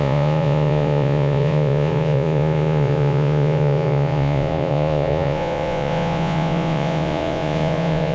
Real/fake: fake